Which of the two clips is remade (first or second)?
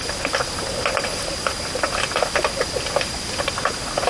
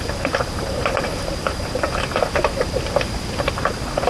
second